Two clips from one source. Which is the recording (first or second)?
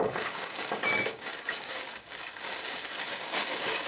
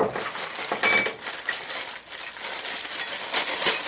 second